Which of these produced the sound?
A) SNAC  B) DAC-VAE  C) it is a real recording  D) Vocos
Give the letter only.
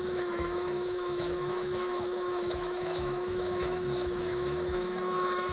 B